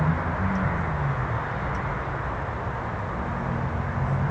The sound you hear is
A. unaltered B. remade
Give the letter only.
A